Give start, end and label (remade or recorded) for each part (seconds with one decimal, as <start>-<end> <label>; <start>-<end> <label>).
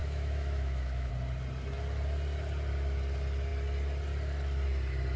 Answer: 0.0-1.1 remade; 1.1-5.2 recorded